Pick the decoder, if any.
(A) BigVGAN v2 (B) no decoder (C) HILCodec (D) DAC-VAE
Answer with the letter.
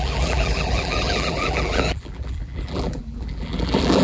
A